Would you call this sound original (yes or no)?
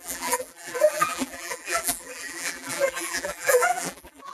no